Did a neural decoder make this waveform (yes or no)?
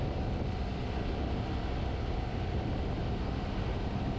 no